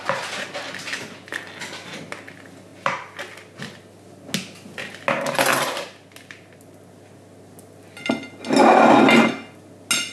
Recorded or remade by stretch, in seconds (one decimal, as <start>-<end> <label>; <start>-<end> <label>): 0.0-10.1 recorded